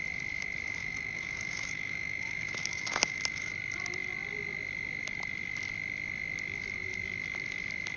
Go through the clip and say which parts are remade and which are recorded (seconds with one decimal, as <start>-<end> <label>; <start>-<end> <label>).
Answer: 0.0-0.8 recorded; 0.8-3.5 remade; 3.5-8.0 recorded